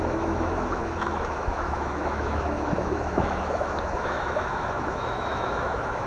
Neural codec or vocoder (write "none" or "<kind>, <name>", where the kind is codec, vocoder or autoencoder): autoencoder, DAC-VAE